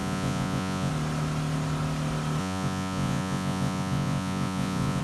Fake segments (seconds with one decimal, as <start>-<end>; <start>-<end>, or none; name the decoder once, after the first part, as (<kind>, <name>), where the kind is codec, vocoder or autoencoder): 0.0-0.9 (vocoder, Vocos); 2.4-5.0